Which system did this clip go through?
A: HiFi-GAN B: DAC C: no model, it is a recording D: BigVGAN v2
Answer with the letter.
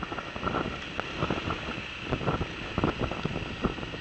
C